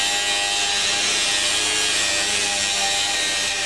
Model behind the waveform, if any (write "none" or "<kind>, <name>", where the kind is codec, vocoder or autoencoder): none